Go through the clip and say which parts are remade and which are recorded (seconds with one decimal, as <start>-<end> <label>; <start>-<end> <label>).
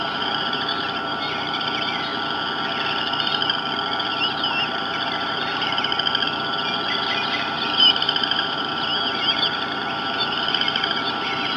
0.0-2.1 remade; 2.1-4.1 recorded; 4.1-5.9 remade; 5.9-6.9 recorded; 6.9-11.6 remade